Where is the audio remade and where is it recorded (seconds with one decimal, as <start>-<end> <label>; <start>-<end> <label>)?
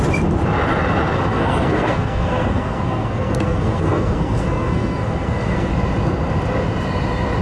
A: 0.0-1.3 recorded; 1.3-5.7 remade; 5.7-7.4 recorded